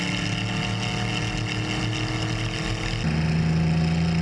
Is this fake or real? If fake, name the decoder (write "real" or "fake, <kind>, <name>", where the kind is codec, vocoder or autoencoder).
real